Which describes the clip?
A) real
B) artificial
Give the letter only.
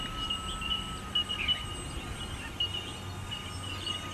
A